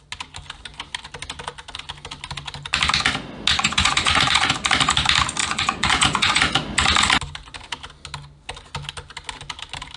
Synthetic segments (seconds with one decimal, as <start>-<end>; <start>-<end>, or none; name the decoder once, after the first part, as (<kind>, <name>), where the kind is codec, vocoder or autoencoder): 3.5-4.5 (vocoder, Vocos); 5.4-6.4